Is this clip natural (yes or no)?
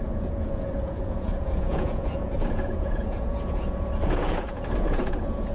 no